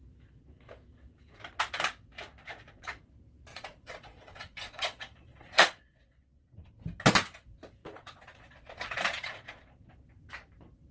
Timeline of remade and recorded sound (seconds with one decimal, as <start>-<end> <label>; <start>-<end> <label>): 0.0-2.4 recorded; 2.4-2.9 remade; 2.9-3.5 recorded; 3.5-6.7 remade; 6.7-7.8 recorded; 7.8-9.9 remade; 9.9-10.9 recorded